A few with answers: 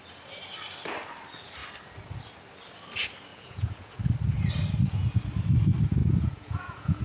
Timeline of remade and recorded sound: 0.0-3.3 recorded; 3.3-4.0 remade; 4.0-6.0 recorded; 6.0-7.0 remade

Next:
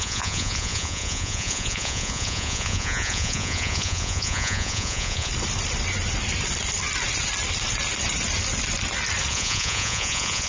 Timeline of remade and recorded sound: 0.0-5.3 remade; 5.3-9.3 recorded; 9.3-10.5 remade

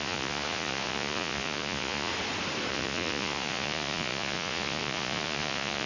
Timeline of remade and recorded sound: 0.0-2.1 remade; 2.1-2.7 recorded; 2.7-5.9 remade

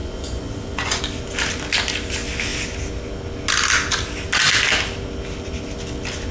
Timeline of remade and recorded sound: 0.0-1.0 remade; 1.0-6.3 recorded

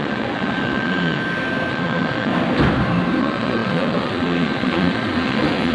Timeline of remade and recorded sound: 0.0-1.2 remade; 1.2-1.7 recorded; 1.7-2.3 remade; 2.3-3.2 recorded; 3.2-5.7 remade

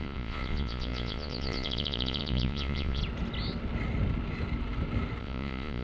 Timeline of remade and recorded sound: 0.0-3.0 remade; 3.0-5.2 recorded; 5.2-5.8 remade